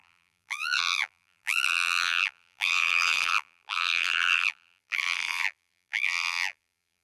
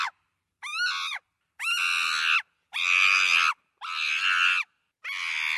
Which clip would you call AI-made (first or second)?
first